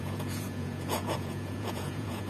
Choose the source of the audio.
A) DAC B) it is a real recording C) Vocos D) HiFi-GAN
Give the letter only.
C